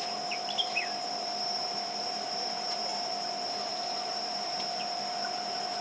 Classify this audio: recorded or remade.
remade